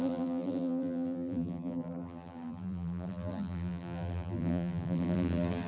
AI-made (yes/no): yes